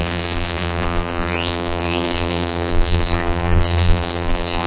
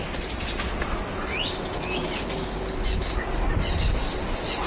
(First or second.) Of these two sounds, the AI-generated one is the first